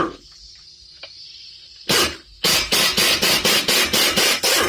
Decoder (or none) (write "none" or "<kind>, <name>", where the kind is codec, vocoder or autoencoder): none